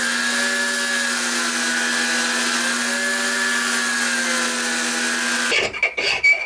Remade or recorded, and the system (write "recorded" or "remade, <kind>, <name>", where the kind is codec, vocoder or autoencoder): recorded